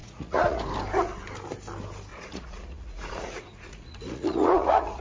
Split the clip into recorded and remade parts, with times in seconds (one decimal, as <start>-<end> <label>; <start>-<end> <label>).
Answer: 0.0-0.6 remade; 0.6-2.1 recorded; 2.1-5.0 remade